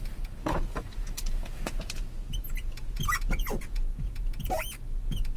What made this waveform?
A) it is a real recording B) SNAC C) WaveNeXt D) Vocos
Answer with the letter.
D